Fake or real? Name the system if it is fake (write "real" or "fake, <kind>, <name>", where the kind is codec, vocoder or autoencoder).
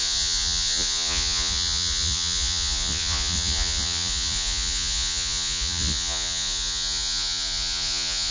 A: fake, vocoder, Vocos